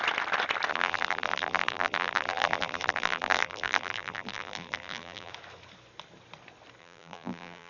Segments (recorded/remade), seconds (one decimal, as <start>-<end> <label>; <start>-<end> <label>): 0.0-0.7 recorded; 0.7-5.3 remade; 5.3-6.8 recorded; 6.8-7.7 remade